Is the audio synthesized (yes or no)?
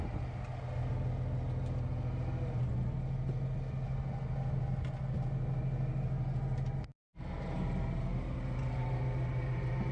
no